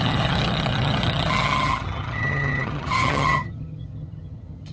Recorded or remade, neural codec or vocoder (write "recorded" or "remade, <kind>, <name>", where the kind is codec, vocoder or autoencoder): remade, vocoder, HiFi-GAN